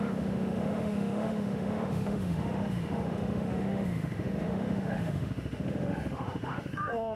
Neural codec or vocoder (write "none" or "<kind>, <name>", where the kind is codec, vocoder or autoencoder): autoencoder, DAC-VAE